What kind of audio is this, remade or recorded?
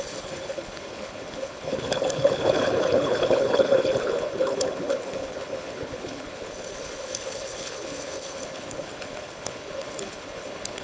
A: remade